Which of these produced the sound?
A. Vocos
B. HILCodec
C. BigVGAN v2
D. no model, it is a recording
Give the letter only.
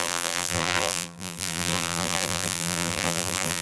C